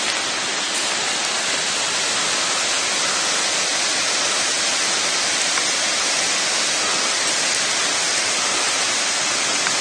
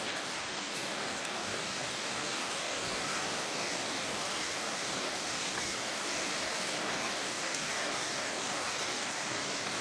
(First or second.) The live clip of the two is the first